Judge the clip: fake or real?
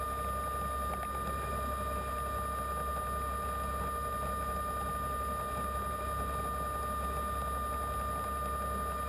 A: real